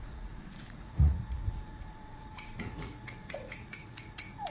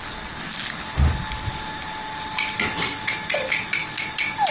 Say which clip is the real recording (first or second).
second